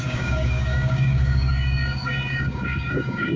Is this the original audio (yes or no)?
no